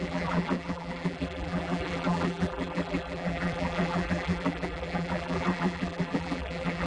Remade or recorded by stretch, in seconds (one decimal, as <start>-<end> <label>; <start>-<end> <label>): 0.0-6.9 remade